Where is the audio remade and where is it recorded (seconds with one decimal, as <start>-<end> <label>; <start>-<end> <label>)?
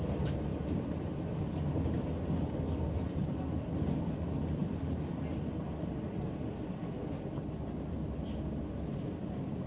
0.0-9.7 recorded